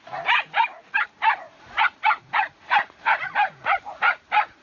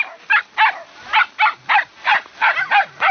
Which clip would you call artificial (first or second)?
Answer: first